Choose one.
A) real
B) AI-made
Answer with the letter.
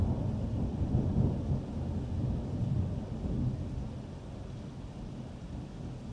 B